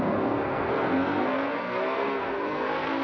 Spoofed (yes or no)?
yes